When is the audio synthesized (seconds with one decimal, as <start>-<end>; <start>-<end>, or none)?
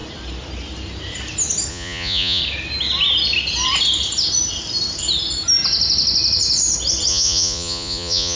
1.7-2.4; 7.1-8.4